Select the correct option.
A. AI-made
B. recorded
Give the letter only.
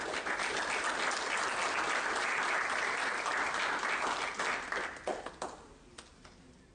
B